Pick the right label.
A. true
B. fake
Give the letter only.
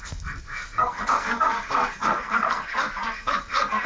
B